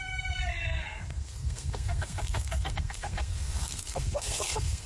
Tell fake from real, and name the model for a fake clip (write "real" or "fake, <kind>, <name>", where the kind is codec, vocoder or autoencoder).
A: fake, codec, SNAC